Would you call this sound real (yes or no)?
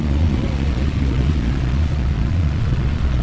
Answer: no